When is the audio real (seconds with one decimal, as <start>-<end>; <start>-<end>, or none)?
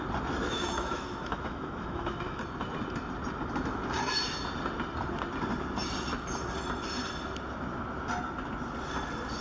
0.0-0.4; 2.4-9.4